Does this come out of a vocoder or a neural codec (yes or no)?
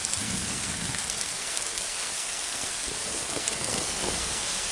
yes